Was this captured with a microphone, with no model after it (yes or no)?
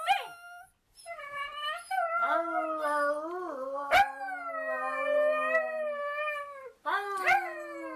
yes